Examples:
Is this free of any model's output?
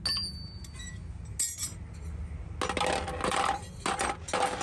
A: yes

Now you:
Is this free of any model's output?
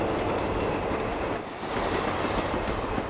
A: yes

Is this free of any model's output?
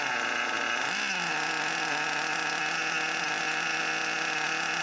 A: yes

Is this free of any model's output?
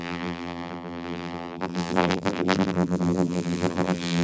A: no